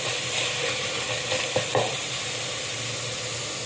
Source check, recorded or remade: recorded